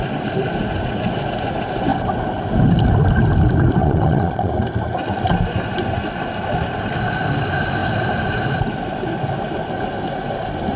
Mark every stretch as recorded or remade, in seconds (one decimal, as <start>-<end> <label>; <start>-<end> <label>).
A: 0.0-3.8 recorded; 3.8-4.5 remade; 4.5-10.8 recorded